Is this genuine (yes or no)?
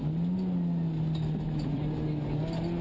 yes